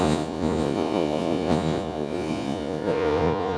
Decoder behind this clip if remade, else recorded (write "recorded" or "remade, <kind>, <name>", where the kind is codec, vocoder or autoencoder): remade, vocoder, Vocos